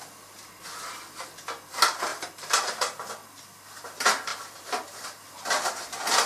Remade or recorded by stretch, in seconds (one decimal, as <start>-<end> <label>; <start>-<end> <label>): 0.0-2.1 recorded; 2.1-3.1 remade; 3.1-6.3 recorded